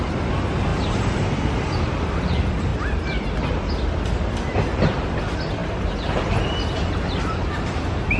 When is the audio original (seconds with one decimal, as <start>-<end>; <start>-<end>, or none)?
0.0-2.7; 3.4-8.2